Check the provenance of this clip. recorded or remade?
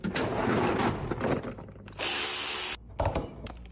recorded